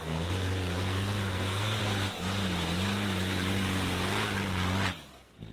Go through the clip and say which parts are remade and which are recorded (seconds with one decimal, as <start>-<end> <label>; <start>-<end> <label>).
0.0-1.8 remade; 1.8-5.1 recorded; 5.1-5.5 remade